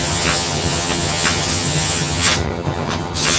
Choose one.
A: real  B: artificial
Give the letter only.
B